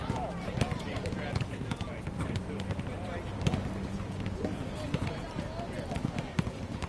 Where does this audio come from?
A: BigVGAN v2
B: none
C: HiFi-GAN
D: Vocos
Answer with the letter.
A